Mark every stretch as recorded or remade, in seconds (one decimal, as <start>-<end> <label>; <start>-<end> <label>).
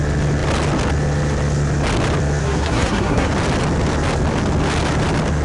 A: 0.0-2.4 recorded; 2.4-3.3 remade; 3.3-5.4 recorded